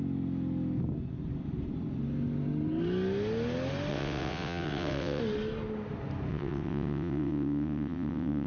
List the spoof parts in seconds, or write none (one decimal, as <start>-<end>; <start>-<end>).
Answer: 3.9-5.2; 6.3-8.5